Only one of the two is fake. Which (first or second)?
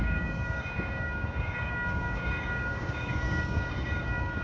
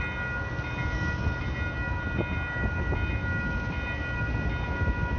first